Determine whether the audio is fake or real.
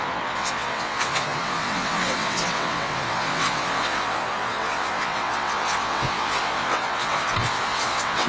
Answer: fake